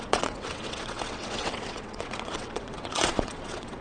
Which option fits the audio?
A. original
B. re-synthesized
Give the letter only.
B